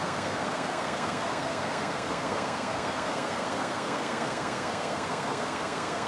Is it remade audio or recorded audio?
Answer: remade